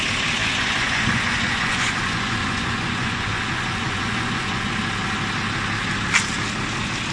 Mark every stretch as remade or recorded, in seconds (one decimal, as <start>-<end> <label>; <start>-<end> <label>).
0.0-0.4 recorded; 0.4-4.7 remade; 4.7-7.1 recorded